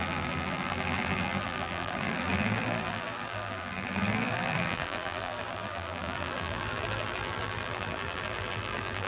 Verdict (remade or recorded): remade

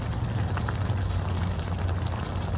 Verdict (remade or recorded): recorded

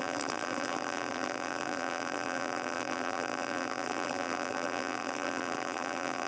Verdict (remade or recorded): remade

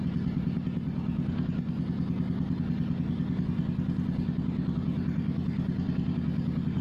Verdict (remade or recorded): recorded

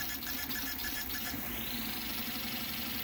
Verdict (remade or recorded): remade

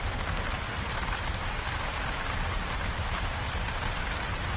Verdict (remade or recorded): recorded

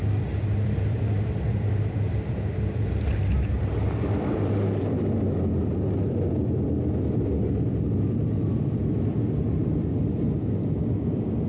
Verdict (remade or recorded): remade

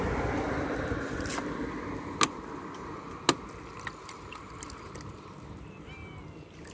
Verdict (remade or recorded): recorded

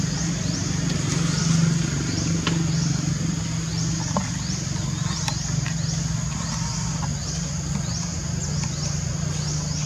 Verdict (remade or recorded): recorded